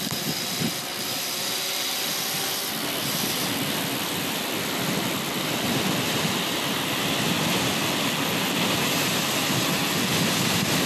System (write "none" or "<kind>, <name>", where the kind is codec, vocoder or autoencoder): none